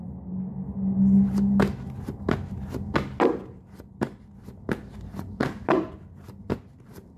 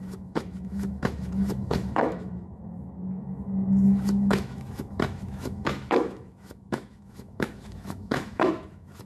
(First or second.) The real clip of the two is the first